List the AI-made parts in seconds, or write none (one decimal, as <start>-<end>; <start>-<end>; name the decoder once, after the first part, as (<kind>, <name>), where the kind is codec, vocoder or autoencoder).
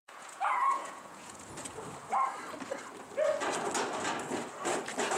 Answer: 0.0-1.5 (vocoder, Vocos)